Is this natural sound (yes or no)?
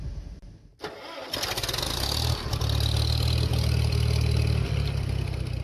yes